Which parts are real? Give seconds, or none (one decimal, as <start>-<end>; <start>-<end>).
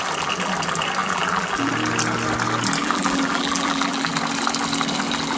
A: 0.0-1.0; 1.7-2.8; 4.1-5.4